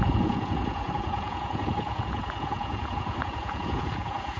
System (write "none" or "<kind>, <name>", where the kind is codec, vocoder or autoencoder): vocoder, Vocos